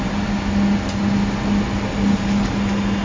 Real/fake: real